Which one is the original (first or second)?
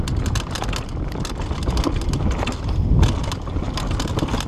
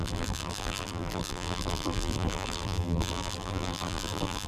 first